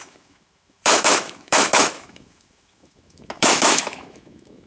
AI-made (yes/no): yes